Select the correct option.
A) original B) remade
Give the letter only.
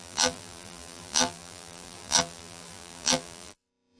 B